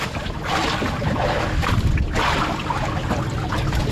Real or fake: real